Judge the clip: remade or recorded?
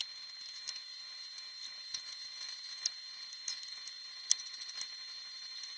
recorded